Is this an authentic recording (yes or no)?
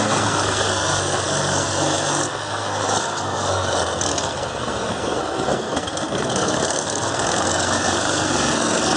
no